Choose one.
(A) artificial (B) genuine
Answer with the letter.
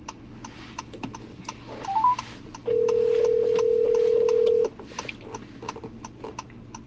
B